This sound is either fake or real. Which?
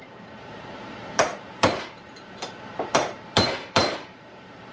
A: fake